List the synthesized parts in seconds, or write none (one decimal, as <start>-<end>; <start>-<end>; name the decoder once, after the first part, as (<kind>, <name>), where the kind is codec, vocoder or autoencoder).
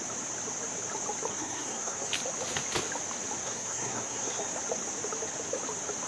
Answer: 1.3-2.1 (codec, SNAC); 3.4-4.4